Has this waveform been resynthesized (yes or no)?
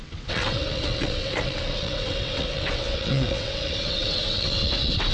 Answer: yes